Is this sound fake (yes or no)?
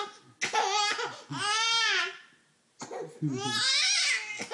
no